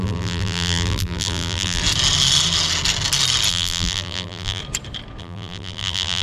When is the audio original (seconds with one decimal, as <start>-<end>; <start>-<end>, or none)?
1.8-3.5; 4.6-5.2